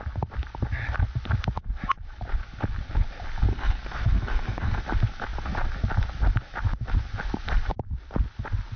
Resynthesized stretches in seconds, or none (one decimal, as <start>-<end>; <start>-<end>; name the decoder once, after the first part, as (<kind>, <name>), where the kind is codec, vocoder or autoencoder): 3.5-4.8 (codec, SNAC)